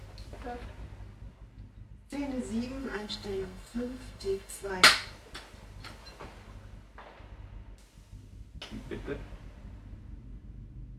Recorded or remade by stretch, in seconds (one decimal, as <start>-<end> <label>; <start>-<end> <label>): 0.0-2.8 recorded; 2.8-4.7 remade; 4.7-11.0 recorded

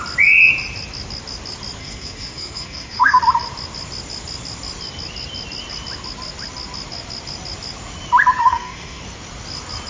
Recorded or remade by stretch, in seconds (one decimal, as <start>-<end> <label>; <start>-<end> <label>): 0.0-1.8 recorded; 1.8-3.2 remade; 3.2-8.4 recorded; 8.4-9.0 remade; 9.0-9.9 recorded